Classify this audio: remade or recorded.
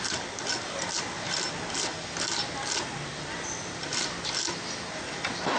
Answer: recorded